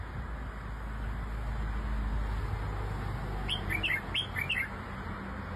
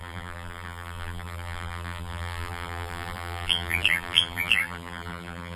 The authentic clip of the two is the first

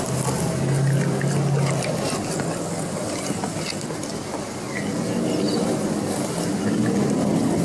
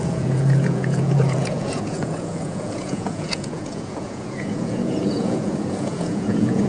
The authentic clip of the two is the first